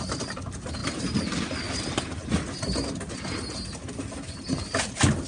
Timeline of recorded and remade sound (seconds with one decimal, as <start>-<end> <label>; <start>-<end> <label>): 0.0-5.3 recorded